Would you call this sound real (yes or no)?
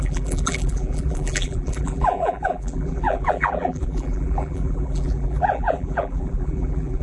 no